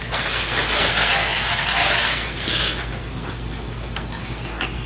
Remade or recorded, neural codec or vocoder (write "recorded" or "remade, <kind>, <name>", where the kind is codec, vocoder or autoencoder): remade, codec, SNAC